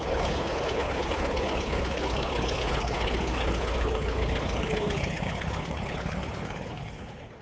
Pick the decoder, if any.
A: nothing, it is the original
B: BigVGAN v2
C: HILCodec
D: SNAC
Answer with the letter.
C